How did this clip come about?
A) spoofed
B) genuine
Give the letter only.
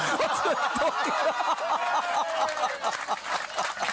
B